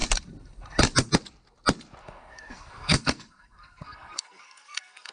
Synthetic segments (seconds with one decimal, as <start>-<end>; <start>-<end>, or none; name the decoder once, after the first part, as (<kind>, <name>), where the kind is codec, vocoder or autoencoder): 2.0-5.1 (codec, SNAC)